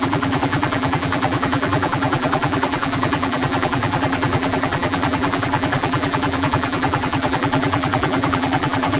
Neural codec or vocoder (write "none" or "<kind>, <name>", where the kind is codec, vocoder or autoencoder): vocoder, BigVGAN v2